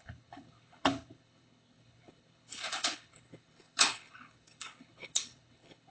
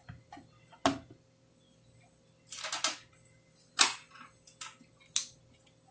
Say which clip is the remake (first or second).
first